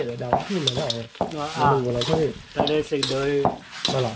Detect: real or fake real